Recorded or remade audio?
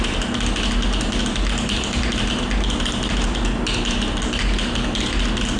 recorded